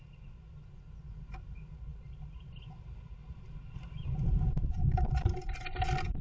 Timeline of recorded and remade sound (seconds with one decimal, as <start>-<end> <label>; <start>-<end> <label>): 0.0-3.2 recorded; 3.2-5.6 remade; 5.6-6.2 recorded